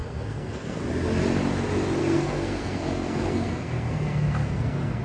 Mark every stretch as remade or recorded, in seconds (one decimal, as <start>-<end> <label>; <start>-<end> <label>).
0.0-0.8 remade; 0.8-2.0 recorded; 2.0-5.0 remade

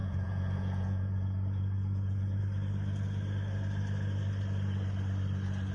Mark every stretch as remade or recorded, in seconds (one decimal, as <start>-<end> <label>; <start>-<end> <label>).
0.0-2.4 remade; 2.4-5.7 recorded

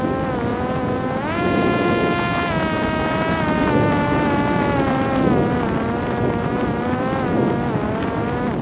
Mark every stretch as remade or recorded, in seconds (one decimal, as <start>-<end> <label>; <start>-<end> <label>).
0.0-0.5 recorded; 0.5-1.9 remade; 1.9-8.6 recorded

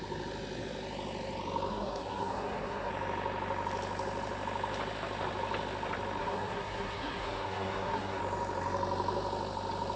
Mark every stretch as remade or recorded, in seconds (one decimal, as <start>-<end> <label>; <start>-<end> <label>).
0.0-1.7 recorded; 1.7-2.9 remade; 2.9-6.2 recorded; 6.2-8.2 remade; 8.2-10.0 recorded

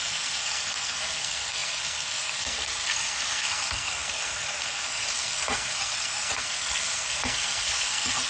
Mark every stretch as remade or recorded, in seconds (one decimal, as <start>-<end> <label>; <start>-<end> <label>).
0.0-8.3 remade

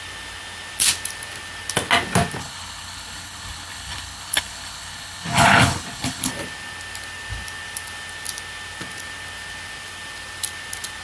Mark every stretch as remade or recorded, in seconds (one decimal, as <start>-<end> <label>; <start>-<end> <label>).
0.0-2.4 recorded; 2.4-6.3 remade; 6.3-11.0 recorded